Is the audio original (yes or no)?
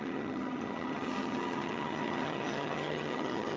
no